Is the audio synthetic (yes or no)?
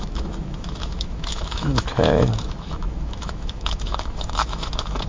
yes